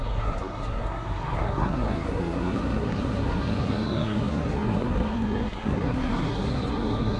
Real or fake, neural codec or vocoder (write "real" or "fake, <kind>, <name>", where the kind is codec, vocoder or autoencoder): fake, codec, SNAC